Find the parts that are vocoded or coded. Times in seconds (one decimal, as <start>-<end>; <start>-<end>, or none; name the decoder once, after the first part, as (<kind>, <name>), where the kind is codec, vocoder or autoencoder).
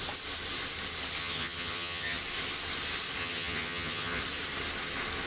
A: 1.2-2.2 (vocoder, HiFi-GAN); 3.2-4.2